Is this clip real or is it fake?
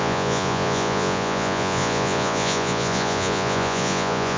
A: fake